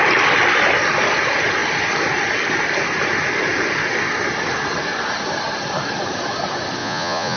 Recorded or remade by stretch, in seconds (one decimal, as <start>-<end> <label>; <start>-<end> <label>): 0.0-6.8 recorded; 6.8-7.4 remade